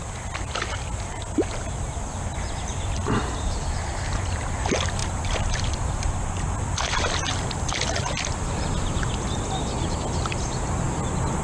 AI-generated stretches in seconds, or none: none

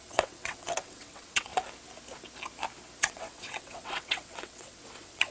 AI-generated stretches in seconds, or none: 0.0-1.5 (vocoder, WaveNeXt); 3.0-5.3

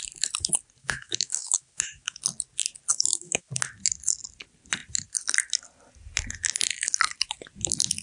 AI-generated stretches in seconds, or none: 0.8-2.2 (autoencoder, DAC-VAE); 2.9-3.5